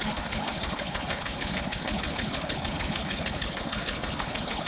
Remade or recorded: remade